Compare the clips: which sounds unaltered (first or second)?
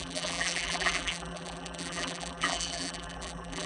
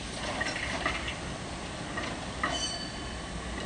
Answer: second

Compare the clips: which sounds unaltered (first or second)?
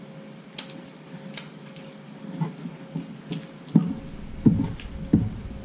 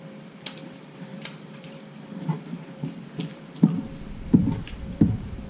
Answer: first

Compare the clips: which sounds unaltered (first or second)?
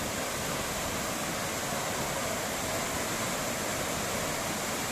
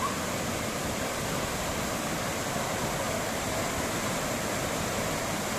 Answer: first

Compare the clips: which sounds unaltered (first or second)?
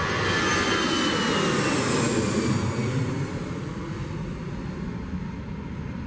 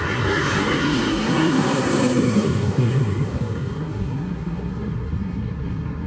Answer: first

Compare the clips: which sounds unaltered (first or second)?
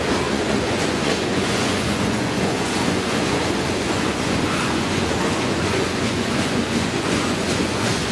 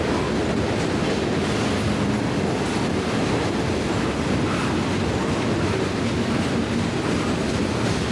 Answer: second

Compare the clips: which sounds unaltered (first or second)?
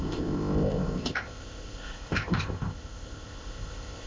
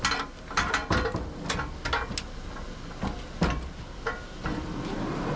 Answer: second